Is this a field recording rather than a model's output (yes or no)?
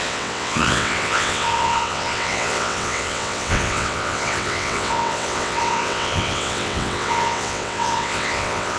no